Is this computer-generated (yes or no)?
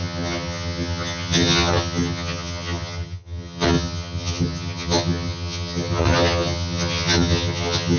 yes